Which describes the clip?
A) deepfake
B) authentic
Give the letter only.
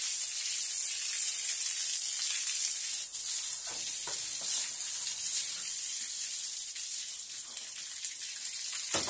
B